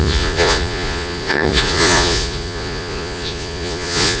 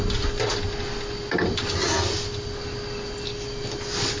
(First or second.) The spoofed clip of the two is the first